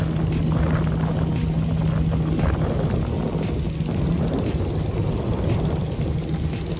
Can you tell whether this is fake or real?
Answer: real